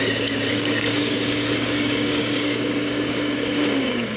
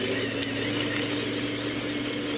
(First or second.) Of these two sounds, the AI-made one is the first